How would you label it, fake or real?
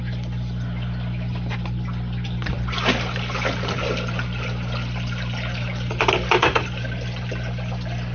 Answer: real